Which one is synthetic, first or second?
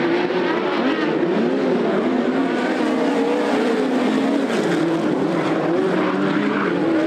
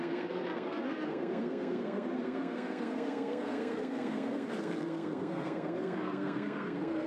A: second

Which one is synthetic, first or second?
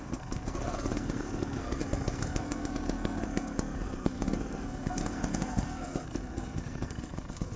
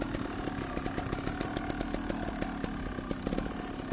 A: first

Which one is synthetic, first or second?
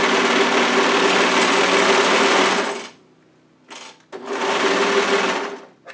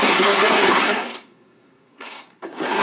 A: second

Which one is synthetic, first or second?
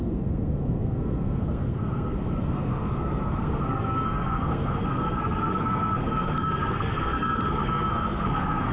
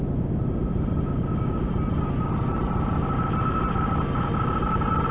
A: first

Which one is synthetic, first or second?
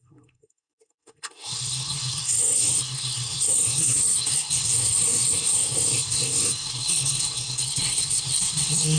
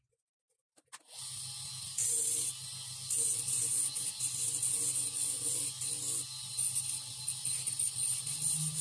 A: first